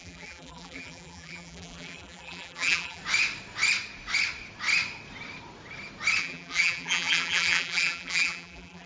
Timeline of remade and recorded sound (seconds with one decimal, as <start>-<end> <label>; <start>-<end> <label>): 0.0-3.0 remade; 3.0-6.2 recorded; 6.2-8.9 remade